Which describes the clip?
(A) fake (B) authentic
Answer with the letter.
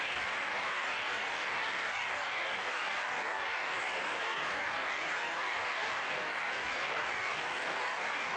A